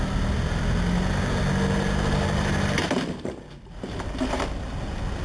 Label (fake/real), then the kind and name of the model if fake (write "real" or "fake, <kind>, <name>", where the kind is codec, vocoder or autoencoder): real